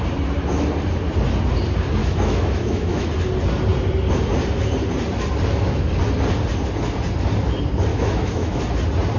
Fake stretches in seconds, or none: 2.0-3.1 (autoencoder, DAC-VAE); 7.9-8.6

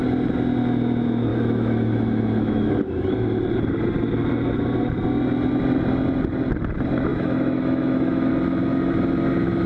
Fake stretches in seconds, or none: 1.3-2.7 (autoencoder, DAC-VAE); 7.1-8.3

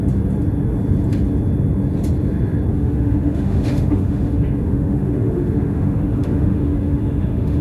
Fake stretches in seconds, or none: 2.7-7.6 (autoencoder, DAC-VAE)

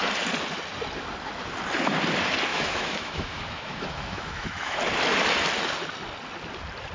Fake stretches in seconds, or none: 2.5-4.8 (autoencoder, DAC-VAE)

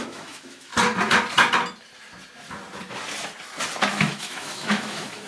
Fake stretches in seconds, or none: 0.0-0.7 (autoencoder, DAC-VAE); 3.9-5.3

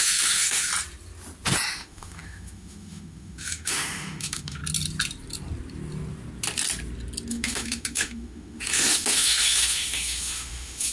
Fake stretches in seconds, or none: 0.0-0.7 (autoencoder, DAC-VAE); 1.7-4.6; 7.3-10.9